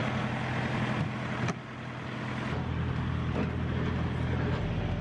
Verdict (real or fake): real